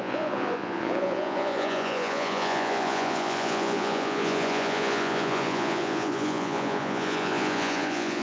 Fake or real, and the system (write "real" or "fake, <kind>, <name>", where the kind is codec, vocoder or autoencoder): fake, vocoder, Vocos